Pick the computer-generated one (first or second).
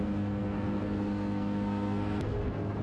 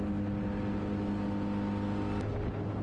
first